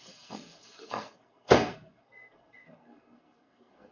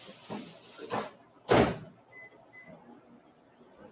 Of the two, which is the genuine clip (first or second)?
second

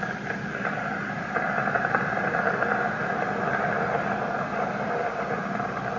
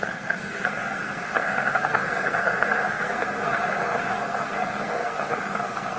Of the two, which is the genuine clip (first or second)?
first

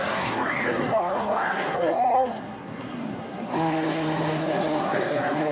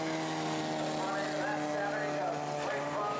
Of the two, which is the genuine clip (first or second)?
second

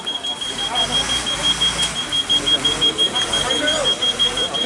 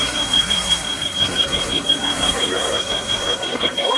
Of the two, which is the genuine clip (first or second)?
first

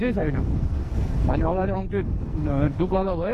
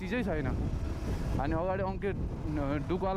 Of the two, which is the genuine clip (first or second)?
second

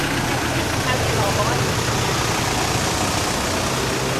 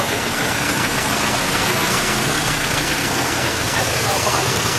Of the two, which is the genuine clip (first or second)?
first